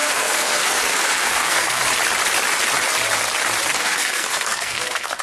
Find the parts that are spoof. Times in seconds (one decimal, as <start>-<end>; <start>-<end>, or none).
0.0-1.8; 3.8-5.2